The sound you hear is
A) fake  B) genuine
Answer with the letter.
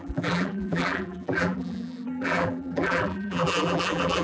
A